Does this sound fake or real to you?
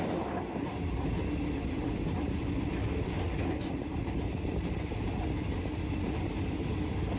real